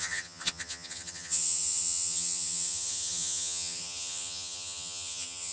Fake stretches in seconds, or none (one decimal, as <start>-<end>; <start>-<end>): 0.0-5.5